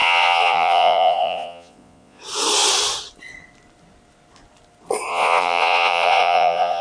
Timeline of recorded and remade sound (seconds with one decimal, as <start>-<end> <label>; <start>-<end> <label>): 0.0-2.2 remade; 2.2-5.1 recorded; 5.1-6.8 remade